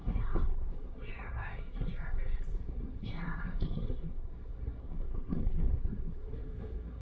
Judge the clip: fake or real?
fake